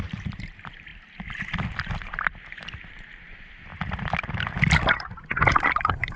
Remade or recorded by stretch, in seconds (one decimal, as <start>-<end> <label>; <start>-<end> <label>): 0.0-0.9 remade; 0.9-2.9 recorded; 2.9-3.7 remade; 3.7-5.8 recorded; 5.8-6.2 remade